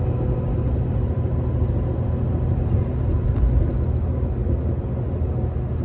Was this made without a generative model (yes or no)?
yes